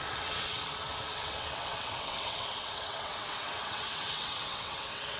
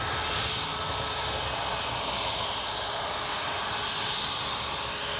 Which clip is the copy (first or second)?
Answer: first